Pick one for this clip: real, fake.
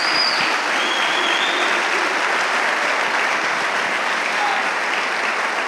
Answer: real